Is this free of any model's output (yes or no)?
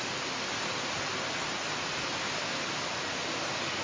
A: yes